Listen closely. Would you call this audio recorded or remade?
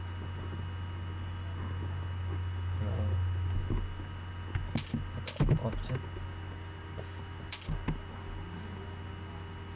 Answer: recorded